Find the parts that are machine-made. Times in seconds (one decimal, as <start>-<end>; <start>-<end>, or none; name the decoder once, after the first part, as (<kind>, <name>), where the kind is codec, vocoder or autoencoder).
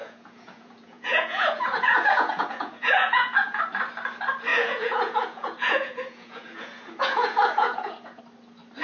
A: 0.0-3.6 (vocoder, Vocos); 4.5-8.2